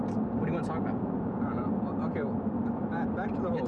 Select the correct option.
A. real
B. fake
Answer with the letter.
A